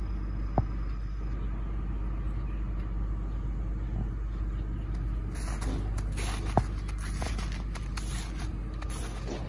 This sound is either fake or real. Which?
real